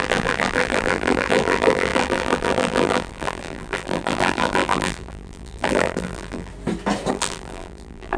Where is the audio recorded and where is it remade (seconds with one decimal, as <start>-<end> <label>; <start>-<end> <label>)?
0.0-6.5 remade; 6.5-7.1 recorded; 7.1-8.2 remade